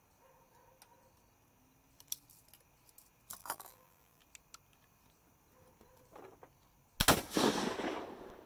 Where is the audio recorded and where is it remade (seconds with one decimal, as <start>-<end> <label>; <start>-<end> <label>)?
0.0-3.4 recorded; 3.4-4.2 remade; 4.2-8.5 recorded